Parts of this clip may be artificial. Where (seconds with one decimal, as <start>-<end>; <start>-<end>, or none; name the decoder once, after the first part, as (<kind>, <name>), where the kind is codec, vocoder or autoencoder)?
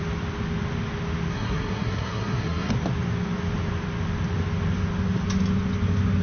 1.3-2.7 (codec, SNAC)